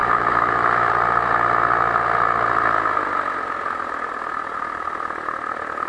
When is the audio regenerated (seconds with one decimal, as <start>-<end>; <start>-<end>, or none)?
0.0-0.9